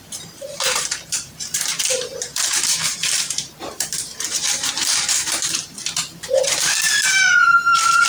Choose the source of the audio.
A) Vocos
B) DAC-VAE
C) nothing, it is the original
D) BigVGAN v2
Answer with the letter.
D